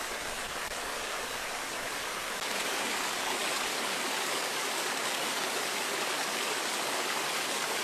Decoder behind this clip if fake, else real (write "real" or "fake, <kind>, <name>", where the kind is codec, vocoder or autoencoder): fake, codec, DAC